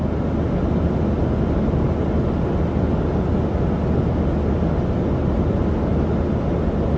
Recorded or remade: recorded